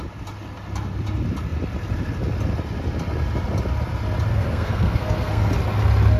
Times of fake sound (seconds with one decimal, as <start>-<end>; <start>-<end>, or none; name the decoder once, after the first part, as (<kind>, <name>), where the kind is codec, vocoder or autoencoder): 4.3-5.5 (codec, SNAC)